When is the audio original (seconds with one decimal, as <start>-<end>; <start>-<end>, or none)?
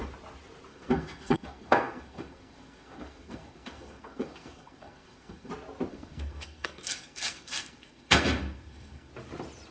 0.0-0.7; 5.5-5.9; 9.1-9.7